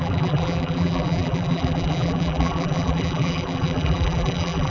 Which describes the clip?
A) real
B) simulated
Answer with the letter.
B